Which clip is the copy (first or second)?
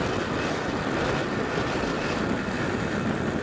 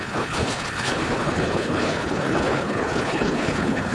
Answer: second